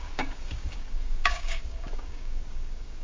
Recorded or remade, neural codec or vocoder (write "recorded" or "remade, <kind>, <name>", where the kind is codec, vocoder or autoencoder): remade, codec, DAC